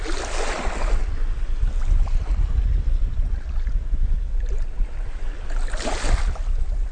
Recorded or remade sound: recorded